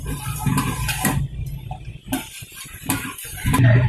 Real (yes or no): no